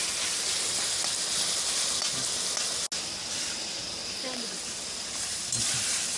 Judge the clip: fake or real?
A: real